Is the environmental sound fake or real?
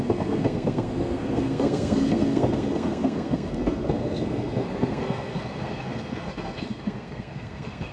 fake